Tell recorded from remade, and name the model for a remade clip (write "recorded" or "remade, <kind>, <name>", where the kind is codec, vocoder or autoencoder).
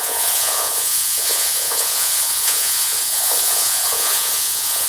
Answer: remade, vocoder, Vocos